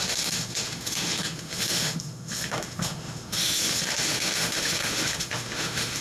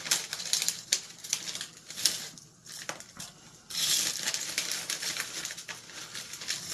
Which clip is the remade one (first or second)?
first